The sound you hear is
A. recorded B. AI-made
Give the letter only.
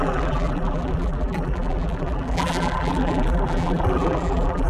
B